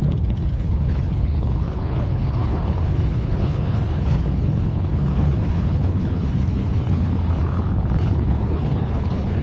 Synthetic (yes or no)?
yes